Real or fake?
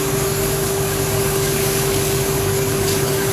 fake